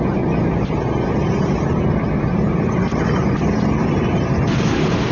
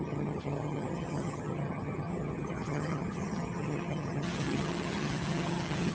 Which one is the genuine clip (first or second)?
first